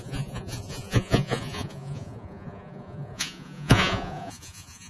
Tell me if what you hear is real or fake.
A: fake